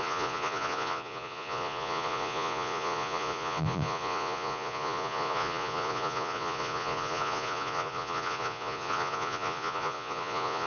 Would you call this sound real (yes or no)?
no